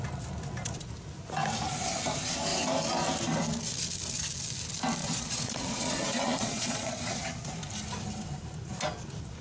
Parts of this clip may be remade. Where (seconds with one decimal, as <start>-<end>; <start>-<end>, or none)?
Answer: 5.0-7.2